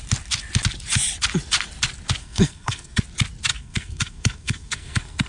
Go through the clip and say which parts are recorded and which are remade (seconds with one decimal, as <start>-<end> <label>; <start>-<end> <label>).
0.0-2.2 recorded; 2.2-3.0 remade; 3.0-3.5 recorded; 3.5-5.3 remade